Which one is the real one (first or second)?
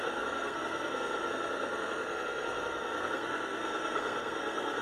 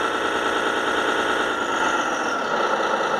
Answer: second